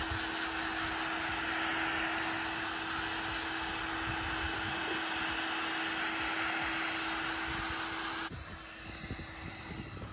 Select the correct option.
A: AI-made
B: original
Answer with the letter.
B